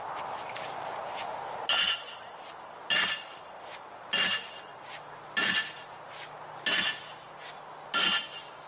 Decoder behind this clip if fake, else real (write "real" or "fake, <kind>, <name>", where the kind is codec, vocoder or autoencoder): real